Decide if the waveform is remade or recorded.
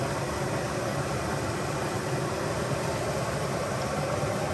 recorded